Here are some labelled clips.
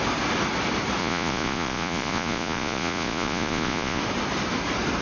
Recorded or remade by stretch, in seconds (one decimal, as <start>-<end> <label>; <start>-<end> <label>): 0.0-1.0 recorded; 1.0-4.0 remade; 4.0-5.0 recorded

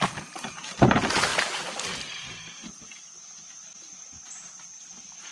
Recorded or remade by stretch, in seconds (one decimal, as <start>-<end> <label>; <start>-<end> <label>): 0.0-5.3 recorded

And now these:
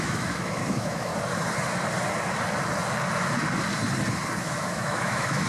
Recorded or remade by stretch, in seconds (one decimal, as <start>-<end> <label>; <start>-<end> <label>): 0.0-1.1 remade; 1.1-4.4 recorded; 4.4-5.5 remade

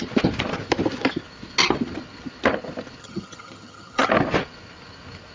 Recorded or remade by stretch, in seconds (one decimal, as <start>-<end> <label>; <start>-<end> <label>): 0.0-3.0 recorded; 3.0-4.1 remade; 4.1-5.3 recorded